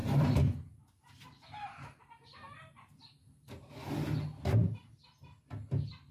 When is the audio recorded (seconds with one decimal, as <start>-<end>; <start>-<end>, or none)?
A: 3.7-6.1